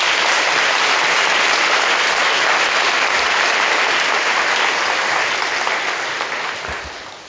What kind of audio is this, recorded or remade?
recorded